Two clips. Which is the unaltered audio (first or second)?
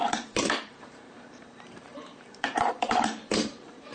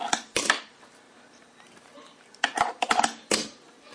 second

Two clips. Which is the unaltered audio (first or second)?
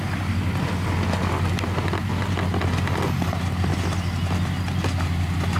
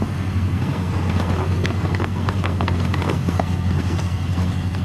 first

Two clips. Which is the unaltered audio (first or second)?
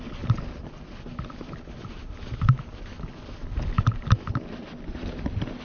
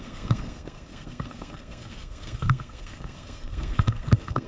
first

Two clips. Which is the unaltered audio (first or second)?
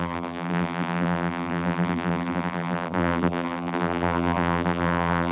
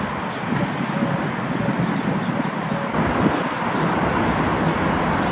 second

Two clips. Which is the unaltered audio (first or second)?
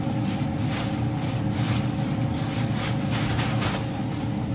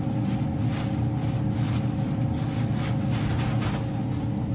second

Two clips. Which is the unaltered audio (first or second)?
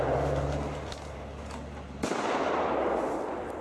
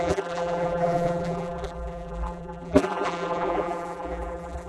first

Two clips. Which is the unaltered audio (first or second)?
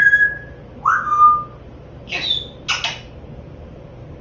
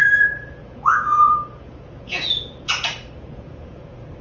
first